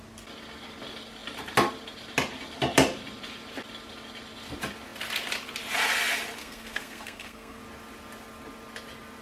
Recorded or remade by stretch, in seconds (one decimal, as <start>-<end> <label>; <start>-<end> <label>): 0.0-6.4 recorded; 6.4-7.6 remade; 7.6-9.2 recorded